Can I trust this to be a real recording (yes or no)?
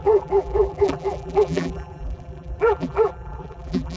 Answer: no